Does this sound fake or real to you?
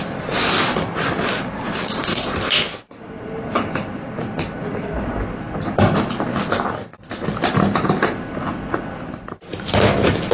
real